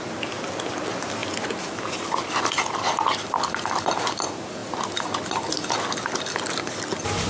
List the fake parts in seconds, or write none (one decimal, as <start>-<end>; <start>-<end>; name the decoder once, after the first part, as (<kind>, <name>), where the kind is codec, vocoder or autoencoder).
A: none